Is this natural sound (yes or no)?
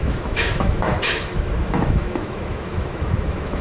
no